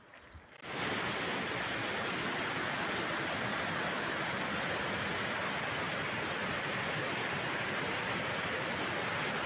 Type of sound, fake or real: real